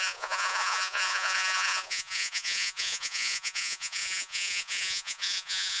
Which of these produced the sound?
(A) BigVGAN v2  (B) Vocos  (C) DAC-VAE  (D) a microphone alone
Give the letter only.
B